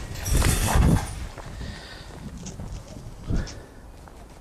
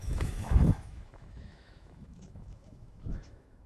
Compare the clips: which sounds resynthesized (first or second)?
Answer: second